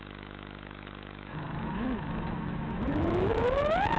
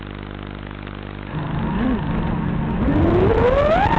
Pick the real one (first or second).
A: second